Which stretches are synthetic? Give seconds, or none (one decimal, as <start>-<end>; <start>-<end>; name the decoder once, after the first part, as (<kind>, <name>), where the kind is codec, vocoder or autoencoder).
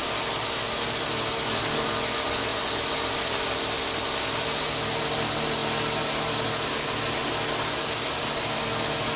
none